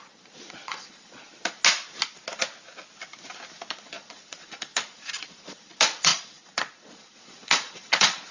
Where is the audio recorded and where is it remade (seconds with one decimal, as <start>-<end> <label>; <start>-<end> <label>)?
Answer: 0.0-1.6 remade; 1.6-3.7 recorded; 3.7-8.3 remade